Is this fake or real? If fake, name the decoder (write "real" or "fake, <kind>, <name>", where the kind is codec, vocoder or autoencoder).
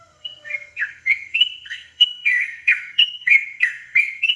fake, codec, SNAC